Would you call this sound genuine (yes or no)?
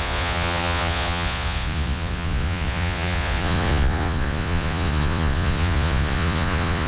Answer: no